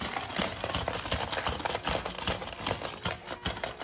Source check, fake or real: real